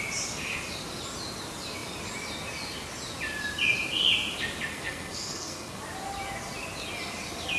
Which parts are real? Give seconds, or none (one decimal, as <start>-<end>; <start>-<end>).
0.0-4.7; 5.8-7.6